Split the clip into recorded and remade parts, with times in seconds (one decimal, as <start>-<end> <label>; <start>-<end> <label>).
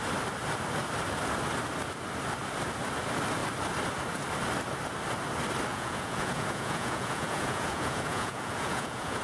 0.0-5.7 recorded; 5.7-9.2 remade